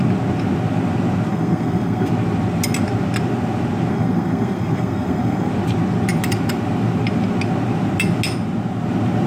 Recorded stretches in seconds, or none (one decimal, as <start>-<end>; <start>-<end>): 0.0-1.3; 2.1-3.9; 5.5-9.3